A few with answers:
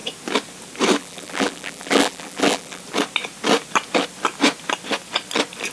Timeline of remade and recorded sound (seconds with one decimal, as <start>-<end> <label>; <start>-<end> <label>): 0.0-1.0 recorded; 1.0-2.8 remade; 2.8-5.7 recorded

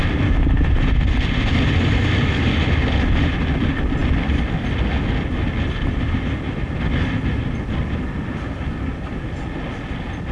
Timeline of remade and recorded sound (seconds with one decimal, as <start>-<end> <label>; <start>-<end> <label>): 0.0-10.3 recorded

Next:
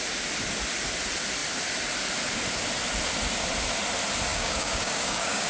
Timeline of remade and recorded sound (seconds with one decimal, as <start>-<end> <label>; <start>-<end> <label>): 0.0-4.3 recorded; 4.3-5.5 remade